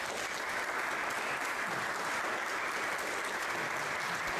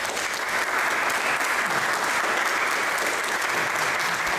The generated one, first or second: first